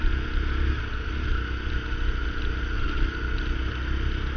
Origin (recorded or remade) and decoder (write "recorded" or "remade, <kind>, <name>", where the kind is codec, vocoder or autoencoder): recorded